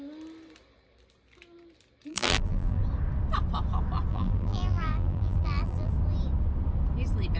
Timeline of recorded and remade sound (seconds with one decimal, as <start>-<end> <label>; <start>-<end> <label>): 0.0-2.1 recorded; 2.1-2.8 remade; 2.8-4.1 recorded; 4.1-5.9 remade; 5.9-7.4 recorded